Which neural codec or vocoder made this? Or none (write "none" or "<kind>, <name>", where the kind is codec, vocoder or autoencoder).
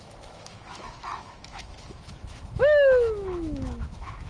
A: autoencoder, DAC-VAE